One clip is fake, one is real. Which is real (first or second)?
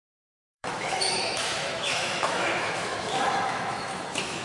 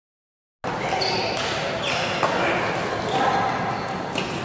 second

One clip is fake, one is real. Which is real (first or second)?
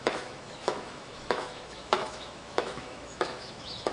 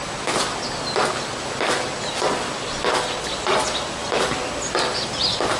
second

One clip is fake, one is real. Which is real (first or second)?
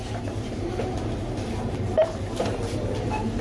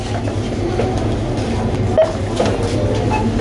second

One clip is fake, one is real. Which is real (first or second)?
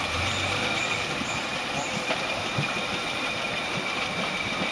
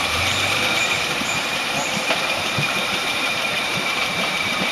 first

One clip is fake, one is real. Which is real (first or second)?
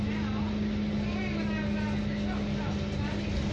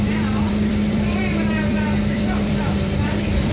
first